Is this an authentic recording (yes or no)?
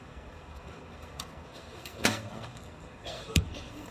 no